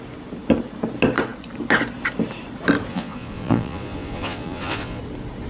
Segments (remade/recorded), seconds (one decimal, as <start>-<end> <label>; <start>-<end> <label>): 0.0-2.9 recorded; 2.9-5.0 remade; 5.0-5.5 recorded